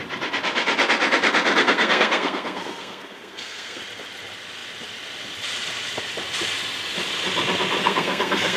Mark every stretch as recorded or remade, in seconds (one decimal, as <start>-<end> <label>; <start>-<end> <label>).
0.0-1.6 recorded; 1.6-3.8 remade; 3.8-7.8 recorded; 7.8-8.6 remade